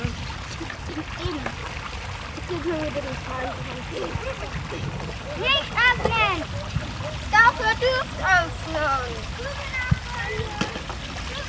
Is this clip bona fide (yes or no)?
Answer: yes